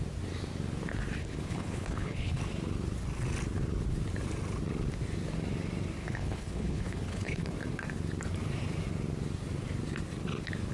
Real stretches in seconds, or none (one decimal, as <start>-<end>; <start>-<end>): 0.0-1.2; 2.4-6.0; 7.5-10.7